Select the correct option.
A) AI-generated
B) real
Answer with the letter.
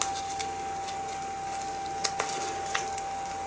B